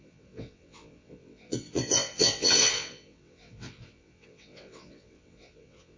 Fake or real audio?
fake